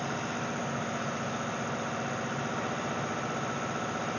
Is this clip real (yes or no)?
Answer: yes